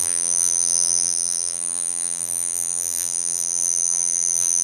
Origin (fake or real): fake